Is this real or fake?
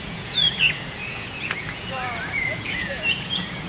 fake